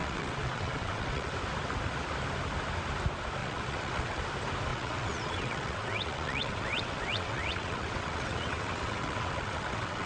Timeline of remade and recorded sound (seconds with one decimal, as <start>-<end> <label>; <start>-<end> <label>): 0.0-1.3 remade; 1.3-3.4 recorded; 3.4-4.2 remade; 4.2-4.7 recorded; 4.7-10.1 remade

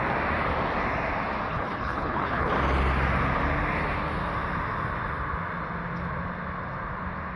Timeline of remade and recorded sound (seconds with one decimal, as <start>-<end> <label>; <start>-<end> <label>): 0.0-1.5 recorded; 1.5-2.5 remade; 2.5-7.4 recorded

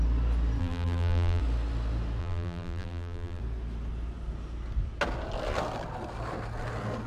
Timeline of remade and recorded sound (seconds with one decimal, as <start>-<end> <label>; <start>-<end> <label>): 0.0-0.6 recorded; 0.6-1.4 remade; 1.4-2.2 recorded; 2.2-3.4 remade; 3.4-7.1 recorded

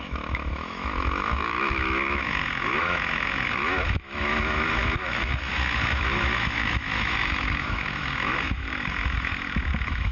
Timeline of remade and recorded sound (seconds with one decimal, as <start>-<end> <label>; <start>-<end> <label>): 0.0-10.1 remade

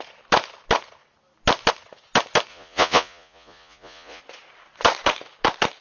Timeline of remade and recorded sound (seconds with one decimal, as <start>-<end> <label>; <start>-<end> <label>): 0.0-2.5 recorded; 2.5-4.2 remade; 4.2-5.8 recorded